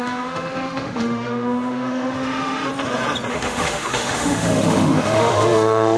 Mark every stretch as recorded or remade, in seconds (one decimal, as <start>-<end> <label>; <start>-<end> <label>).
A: 0.0-2.7 remade; 2.7-3.3 recorded; 3.3-6.0 remade